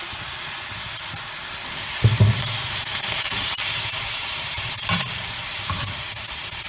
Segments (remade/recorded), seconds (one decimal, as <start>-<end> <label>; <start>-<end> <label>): 0.0-2.6 recorded; 2.6-5.9 remade; 5.9-6.7 recorded